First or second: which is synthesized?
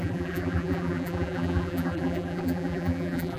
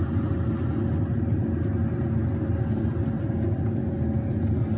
first